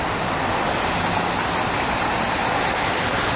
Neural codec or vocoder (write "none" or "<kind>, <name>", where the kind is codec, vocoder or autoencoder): vocoder, BigVGAN v2